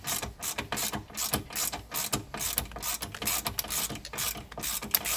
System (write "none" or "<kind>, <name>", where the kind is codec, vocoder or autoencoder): none